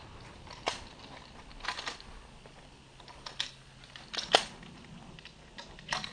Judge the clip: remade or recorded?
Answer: recorded